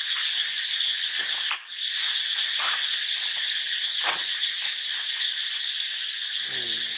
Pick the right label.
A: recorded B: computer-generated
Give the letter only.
A